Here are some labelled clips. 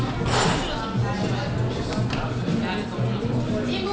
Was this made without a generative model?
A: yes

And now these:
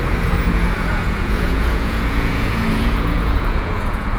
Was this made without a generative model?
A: no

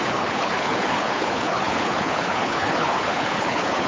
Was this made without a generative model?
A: no